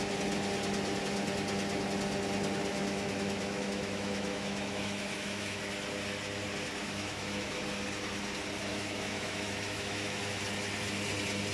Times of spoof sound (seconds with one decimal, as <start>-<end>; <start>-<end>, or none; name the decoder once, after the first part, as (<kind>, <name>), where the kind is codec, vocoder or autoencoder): 2.7-5.6 (autoencoder, DAC-VAE); 6.8-7.6; 8.7-10.4